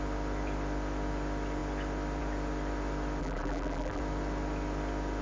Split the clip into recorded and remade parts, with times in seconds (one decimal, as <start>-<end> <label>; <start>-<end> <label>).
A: 0.0-3.2 recorded; 3.2-4.0 remade; 4.0-5.2 recorded